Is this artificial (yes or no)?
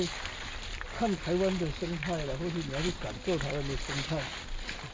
no